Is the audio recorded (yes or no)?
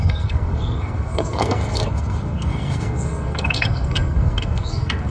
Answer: no